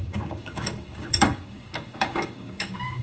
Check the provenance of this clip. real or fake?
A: fake